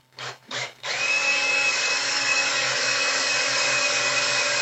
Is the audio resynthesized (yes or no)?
yes